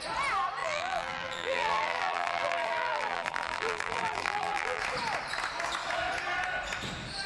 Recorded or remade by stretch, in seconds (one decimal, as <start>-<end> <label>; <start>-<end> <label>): 0.0-0.6 recorded; 0.6-4.8 remade; 4.8-7.3 recorded